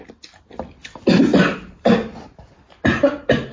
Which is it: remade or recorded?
recorded